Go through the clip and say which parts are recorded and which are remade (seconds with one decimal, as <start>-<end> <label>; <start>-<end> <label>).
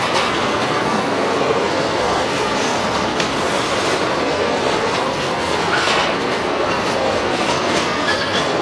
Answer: 0.0-3.3 remade; 3.3-4.2 recorded; 4.2-8.6 remade